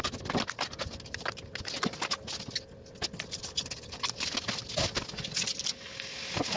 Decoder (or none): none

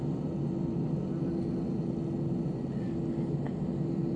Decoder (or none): none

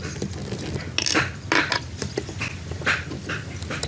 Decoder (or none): none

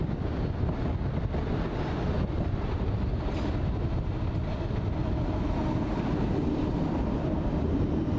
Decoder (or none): none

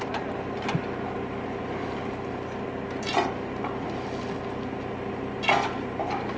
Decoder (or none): none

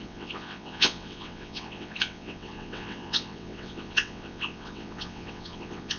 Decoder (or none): vocoder, WaveNeXt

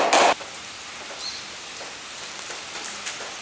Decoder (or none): none